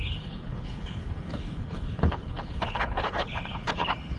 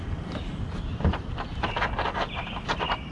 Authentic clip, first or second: second